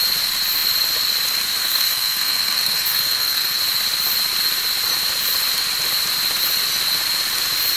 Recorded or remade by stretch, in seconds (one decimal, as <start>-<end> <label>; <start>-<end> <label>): 0.0-1.6 recorded; 1.6-3.6 remade; 3.6-7.8 recorded